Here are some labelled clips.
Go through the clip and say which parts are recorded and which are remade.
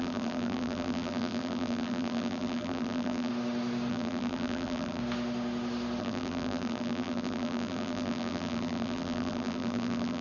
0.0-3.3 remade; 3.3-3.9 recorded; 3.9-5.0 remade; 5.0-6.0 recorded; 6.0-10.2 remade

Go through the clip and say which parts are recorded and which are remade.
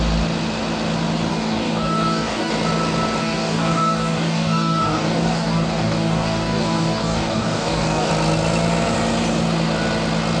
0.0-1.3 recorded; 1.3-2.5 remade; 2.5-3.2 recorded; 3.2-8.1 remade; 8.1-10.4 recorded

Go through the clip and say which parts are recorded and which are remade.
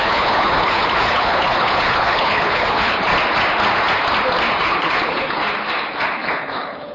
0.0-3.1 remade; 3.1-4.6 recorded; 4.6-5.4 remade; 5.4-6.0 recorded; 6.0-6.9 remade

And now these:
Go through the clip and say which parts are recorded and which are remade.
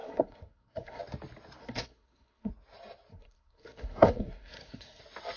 0.0-1.0 remade; 1.0-1.6 recorded; 1.6-2.5 remade; 2.5-3.1 recorded; 3.1-5.0 remade; 5.0-5.4 recorded